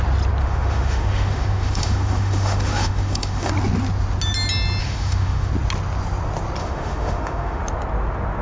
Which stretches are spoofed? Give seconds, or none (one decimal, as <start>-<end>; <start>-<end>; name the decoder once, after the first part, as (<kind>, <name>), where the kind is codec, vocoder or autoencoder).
0.4-3.5 (autoencoder, DAC-VAE); 4.8-5.5; 6.6-7.6